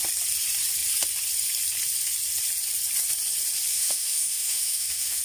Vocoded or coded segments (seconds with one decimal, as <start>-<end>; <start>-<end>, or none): 3.7-5.2